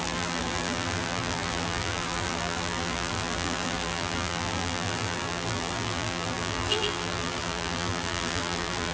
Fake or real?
fake